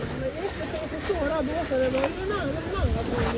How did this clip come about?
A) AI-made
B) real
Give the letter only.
B